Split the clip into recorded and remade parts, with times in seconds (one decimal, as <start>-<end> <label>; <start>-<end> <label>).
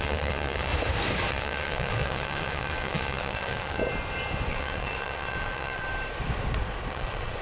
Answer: 0.0-0.7 remade; 0.7-1.3 recorded; 1.3-3.8 remade; 3.8-4.5 recorded; 4.5-5.9 remade; 5.9-6.9 recorded; 6.9-7.4 remade